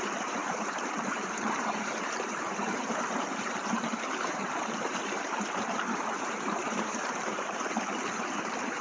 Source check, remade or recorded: remade